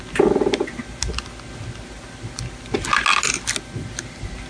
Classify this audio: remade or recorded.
recorded